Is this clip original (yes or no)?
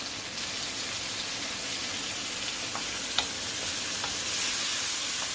yes